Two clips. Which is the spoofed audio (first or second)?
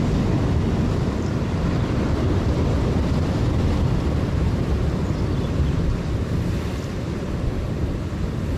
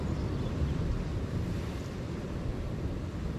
first